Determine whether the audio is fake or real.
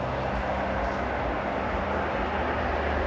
real